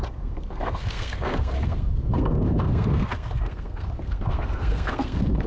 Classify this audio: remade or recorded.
remade